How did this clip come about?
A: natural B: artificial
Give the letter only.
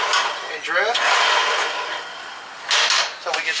A